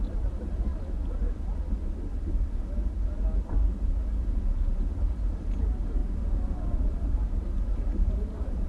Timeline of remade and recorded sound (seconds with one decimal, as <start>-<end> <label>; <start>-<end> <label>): 0.0-0.7 remade; 0.7-4.9 recorded; 4.9-6.0 remade; 6.0-6.8 recorded; 6.8-8.7 remade